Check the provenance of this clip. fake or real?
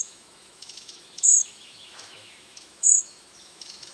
fake